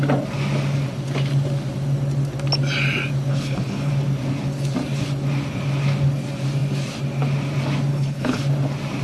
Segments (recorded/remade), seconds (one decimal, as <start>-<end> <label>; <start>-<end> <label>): 0.0-3.3 recorded; 3.3-3.9 remade; 3.9-7.9 recorded; 7.9-8.4 remade; 8.4-9.0 recorded

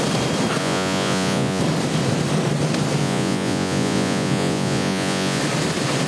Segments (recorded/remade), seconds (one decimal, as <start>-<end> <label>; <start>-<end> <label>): 0.0-0.6 recorded; 0.6-1.6 remade; 1.6-3.0 recorded; 3.0-5.4 remade; 5.4-6.1 recorded

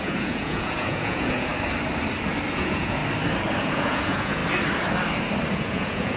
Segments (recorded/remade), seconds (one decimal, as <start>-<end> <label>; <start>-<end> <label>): 0.0-1.5 remade; 1.5-2.5 recorded; 2.5-3.0 remade; 3.0-3.6 recorded; 3.6-4.4 remade; 4.4-5.5 recorded; 5.5-6.2 remade

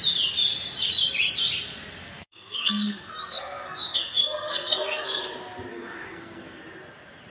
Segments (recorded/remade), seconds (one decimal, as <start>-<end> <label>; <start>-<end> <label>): 0.0-2.0 recorded; 2.0-5.3 remade; 5.3-5.7 recorded; 5.7-6.6 remade; 6.6-7.3 recorded